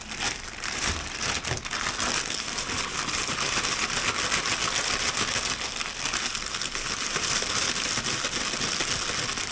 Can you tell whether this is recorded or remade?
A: recorded